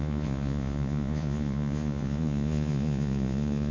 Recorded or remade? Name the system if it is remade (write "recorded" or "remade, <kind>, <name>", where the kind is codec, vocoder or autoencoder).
remade, vocoder, Vocos